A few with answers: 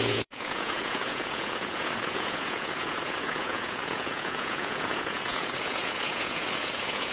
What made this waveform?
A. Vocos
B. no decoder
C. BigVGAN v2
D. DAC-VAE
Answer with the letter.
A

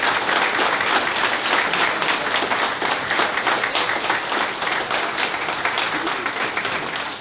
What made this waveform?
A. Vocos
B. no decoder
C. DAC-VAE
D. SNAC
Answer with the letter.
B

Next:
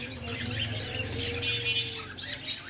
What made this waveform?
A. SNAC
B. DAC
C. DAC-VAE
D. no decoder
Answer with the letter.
D